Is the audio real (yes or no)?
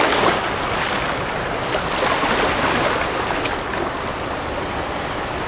yes